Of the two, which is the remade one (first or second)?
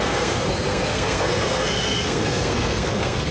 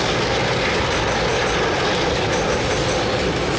first